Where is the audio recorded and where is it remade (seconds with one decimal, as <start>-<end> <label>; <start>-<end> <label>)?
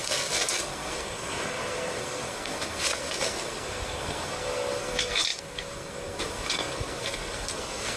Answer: 0.0-8.0 remade